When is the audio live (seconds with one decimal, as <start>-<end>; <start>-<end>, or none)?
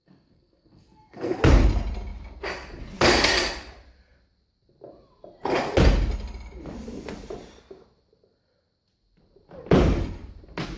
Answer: 1.4-10.8